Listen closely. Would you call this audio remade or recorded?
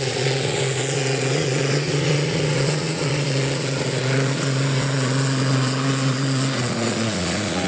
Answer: remade